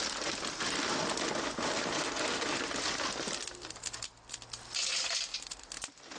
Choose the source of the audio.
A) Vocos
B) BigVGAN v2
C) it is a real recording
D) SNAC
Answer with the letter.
C